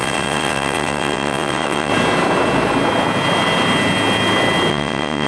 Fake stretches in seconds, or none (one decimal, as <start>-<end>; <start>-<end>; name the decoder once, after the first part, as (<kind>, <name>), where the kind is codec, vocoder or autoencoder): 0.0-1.9 (vocoder, WaveNeXt); 4.7-5.3